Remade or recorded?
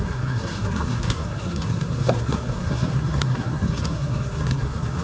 remade